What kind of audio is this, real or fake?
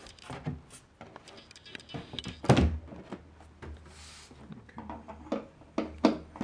real